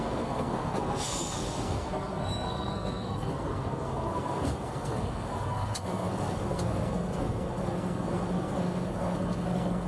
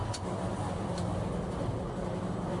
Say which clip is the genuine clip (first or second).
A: second